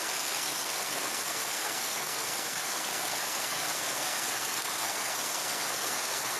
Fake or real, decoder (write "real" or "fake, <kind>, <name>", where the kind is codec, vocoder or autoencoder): fake, codec, SNAC